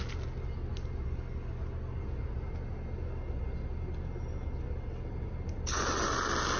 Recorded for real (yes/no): yes